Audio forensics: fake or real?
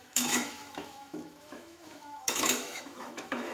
fake